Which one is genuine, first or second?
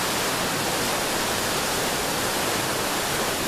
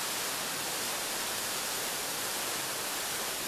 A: first